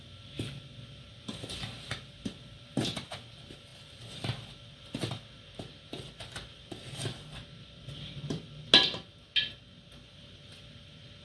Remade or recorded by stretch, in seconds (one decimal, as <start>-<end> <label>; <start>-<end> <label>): 0.0-11.2 recorded